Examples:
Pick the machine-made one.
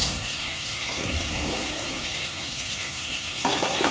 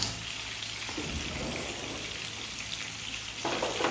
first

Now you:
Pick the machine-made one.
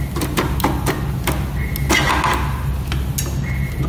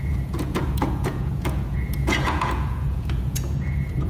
second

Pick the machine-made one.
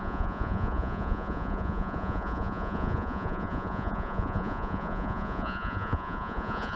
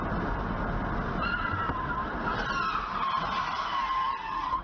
first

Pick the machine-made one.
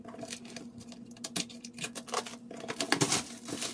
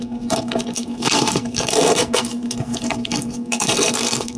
second